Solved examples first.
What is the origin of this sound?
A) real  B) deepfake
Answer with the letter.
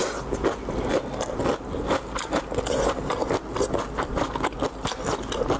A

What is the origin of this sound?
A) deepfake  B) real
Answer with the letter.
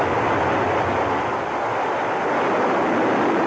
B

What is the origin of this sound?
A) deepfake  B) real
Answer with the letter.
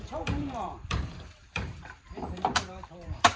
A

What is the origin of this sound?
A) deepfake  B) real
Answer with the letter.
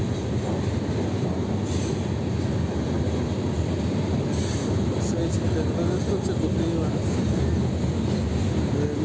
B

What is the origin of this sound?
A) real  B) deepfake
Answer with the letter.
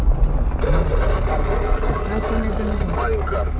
A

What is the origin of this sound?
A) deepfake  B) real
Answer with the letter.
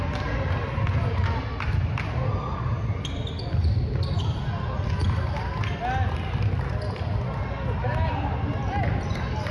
B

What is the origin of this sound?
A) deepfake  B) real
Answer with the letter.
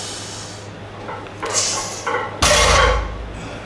B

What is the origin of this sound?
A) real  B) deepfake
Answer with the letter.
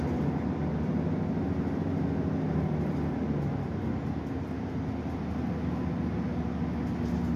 A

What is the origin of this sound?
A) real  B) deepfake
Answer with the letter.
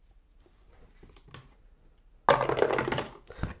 A